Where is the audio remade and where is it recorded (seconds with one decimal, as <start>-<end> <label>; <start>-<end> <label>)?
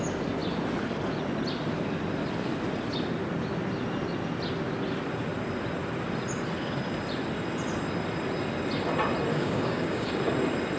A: 0.0-9.3 recorded; 9.3-10.1 remade; 10.1-10.8 recorded